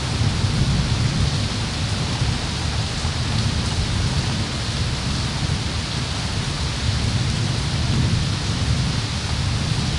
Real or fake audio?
real